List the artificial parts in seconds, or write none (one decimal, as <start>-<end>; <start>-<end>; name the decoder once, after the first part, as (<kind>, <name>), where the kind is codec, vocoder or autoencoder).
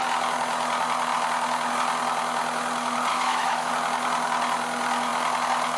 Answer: 3.1-3.7 (autoencoder, DAC-VAE)